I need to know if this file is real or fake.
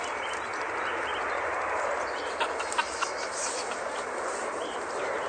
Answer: fake